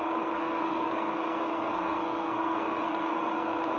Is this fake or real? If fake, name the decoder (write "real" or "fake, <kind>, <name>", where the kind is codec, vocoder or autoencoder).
fake, codec, SNAC